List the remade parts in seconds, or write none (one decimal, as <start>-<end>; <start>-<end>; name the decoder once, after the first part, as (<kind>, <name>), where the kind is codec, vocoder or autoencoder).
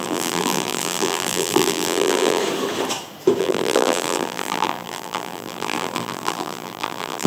0.0-2.4 (vocoder, BigVGAN v2); 3.4-7.3